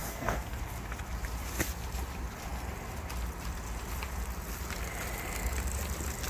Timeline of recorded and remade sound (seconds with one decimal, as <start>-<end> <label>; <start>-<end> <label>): 0.0-0.6 remade; 0.6-6.3 recorded